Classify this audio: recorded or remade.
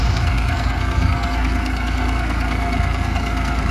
remade